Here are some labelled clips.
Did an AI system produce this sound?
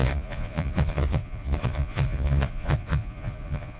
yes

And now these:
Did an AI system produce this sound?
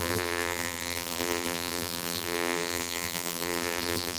yes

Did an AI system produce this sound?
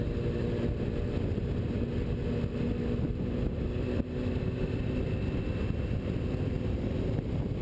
no